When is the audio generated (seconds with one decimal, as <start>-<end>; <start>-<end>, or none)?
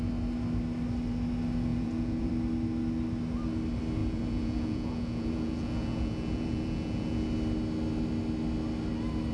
1.7-2.3; 4.0-7.3